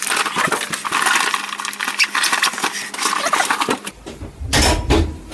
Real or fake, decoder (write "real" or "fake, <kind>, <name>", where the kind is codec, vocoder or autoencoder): real